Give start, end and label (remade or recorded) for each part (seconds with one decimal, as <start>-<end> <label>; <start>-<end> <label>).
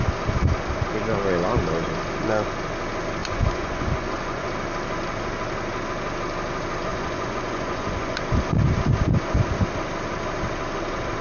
0.0-3.2 recorded; 3.2-4.5 remade; 4.5-6.9 recorded; 6.9-8.2 remade; 8.2-11.2 recorded